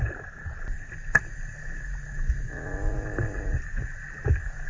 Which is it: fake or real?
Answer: real